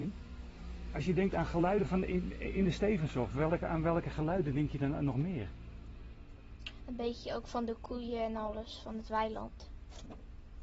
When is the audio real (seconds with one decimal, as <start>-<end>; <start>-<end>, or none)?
1.8-10.6